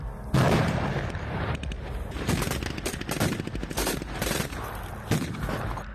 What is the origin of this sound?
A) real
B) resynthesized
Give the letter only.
A